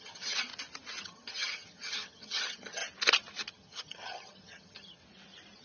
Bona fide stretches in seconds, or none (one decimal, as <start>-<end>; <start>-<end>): 0.5-1.0; 2.8-3.5; 5.0-5.6